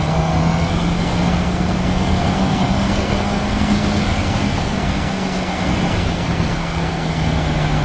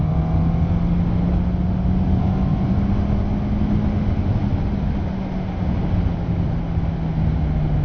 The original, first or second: second